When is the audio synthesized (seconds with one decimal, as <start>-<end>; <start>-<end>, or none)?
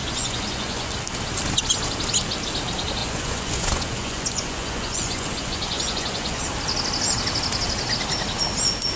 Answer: 0.0-0.9; 3.0-6.4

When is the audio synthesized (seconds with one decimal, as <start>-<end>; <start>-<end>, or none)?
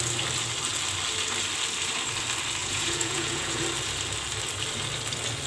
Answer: 2.6-3.6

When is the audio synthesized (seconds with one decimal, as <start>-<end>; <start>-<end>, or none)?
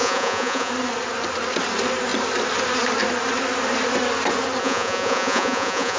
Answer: 0.0-0.7; 4.6-6.0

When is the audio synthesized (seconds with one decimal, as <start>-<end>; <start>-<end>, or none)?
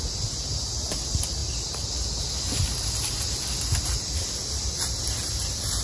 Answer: none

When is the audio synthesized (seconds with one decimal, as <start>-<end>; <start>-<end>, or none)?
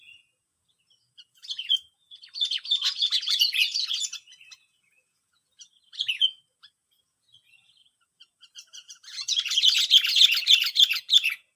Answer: 0.0-11.6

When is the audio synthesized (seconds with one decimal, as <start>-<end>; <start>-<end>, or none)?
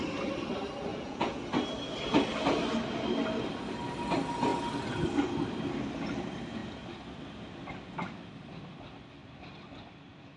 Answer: 0.9-1.4